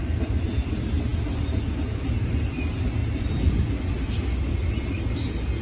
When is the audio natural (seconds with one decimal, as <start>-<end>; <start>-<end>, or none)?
0.0-5.6